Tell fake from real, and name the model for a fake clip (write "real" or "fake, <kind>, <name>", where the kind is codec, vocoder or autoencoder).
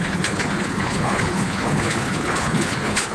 fake, codec, HILCodec